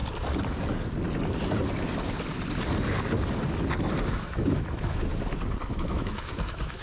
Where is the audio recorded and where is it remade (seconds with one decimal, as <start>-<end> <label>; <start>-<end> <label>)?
0.0-4.1 recorded; 4.1-5.1 remade; 5.1-5.7 recorded; 5.7-6.8 remade